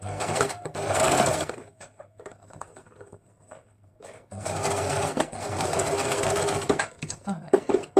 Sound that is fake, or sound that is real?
fake